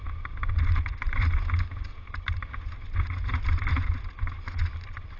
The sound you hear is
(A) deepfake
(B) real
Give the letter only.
B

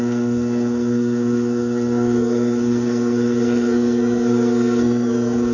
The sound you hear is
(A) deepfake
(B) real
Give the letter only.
A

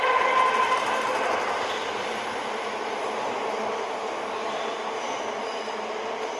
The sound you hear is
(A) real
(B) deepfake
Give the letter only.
A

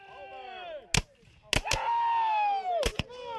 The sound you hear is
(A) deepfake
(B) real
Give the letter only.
B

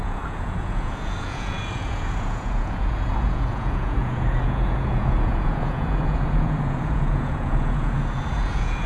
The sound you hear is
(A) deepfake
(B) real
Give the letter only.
A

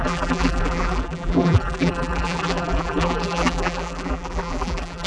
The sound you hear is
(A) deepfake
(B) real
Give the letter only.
A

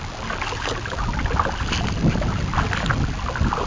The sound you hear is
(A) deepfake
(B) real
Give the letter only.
B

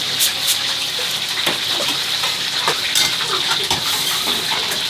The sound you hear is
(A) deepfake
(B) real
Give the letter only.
B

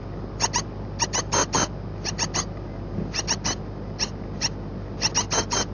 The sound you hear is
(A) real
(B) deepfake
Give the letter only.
A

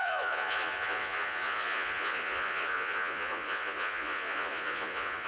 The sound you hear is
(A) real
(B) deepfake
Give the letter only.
B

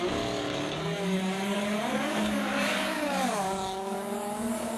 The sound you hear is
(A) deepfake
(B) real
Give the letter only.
A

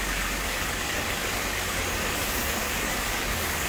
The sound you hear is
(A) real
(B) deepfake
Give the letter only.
B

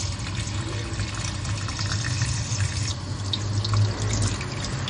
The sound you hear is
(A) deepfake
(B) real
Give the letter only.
B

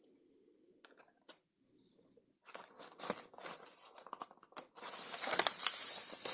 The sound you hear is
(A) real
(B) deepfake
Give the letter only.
A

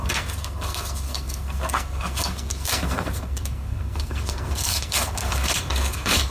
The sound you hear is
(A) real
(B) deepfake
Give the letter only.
B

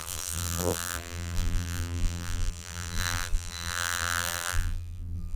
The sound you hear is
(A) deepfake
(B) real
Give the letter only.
A